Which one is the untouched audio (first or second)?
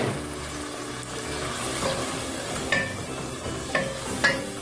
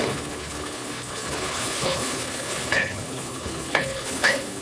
first